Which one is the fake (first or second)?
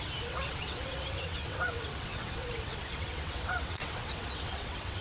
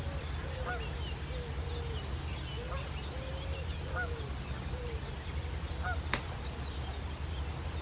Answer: first